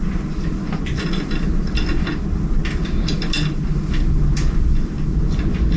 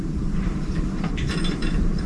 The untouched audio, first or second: first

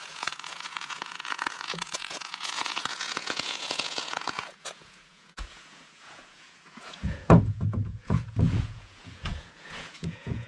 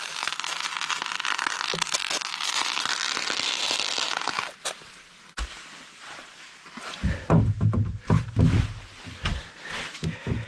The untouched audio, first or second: second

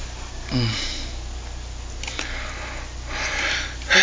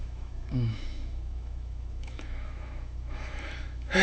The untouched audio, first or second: first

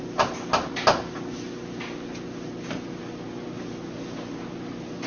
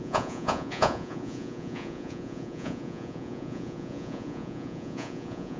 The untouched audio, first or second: first